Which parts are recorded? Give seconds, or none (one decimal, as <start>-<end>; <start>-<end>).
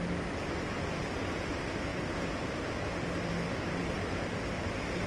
0.0-1.9; 4.2-5.1